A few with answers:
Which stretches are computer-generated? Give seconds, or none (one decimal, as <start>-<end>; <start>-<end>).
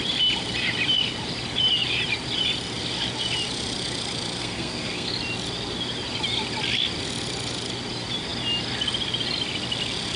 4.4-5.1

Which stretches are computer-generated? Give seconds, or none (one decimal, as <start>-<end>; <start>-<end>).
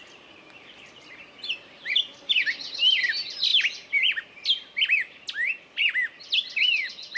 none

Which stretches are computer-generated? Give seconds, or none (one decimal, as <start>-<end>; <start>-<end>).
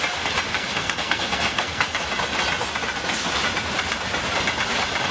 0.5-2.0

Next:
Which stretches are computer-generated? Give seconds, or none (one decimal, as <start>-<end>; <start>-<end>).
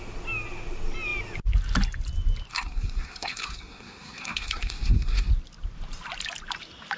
2.5-5.3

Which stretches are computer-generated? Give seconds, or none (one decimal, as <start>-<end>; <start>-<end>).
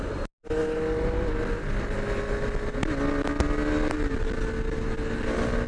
none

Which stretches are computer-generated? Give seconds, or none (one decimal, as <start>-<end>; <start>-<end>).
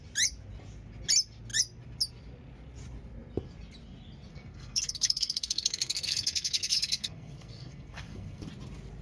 4.3-8.5